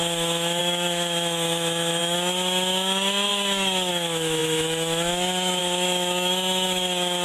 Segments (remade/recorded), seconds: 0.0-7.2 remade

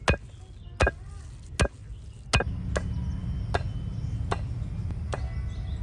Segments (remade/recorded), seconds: 0.0-5.8 recorded

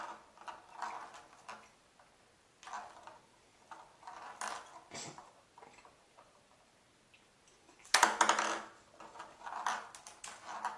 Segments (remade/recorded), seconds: 0.0-10.8 recorded